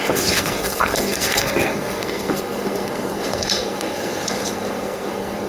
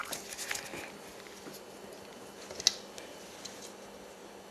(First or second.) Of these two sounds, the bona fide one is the second